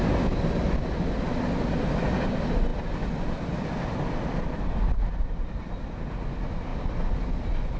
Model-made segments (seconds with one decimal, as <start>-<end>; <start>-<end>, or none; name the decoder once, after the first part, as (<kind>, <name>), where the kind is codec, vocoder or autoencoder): none